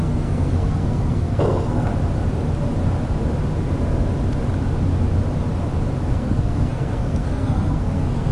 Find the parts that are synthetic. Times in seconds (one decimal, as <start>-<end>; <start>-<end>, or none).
0.0-1.9; 6.1-8.3